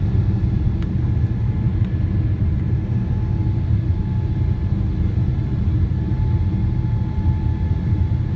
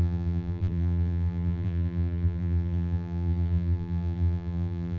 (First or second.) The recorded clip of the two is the first